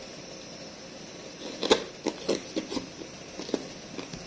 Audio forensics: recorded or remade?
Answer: recorded